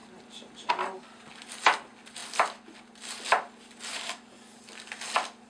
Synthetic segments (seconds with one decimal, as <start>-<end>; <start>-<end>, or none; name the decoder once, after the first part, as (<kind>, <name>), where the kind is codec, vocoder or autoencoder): none

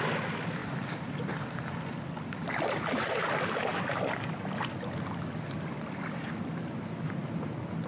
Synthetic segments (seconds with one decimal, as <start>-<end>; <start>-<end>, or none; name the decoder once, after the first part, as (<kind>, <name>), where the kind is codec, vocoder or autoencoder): none

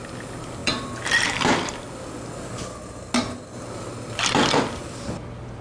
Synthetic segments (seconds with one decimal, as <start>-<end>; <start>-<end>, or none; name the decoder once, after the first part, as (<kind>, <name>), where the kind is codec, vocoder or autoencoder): none

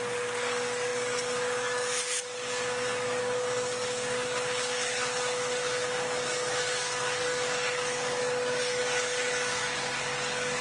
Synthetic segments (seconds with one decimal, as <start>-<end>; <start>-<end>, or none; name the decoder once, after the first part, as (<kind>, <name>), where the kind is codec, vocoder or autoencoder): 0.0-10.6 (codec, DAC)

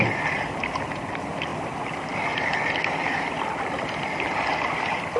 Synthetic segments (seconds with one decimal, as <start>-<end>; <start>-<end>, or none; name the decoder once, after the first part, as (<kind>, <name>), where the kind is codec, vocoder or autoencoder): none

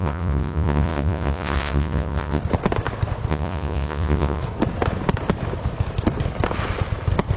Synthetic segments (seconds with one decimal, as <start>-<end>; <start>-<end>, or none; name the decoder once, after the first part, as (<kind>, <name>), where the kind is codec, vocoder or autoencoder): 0.0-2.4 (vocoder, Vocos); 3.3-4.4